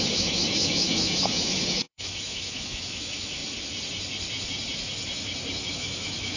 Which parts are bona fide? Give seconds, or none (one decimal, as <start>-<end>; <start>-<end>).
3.4-5.7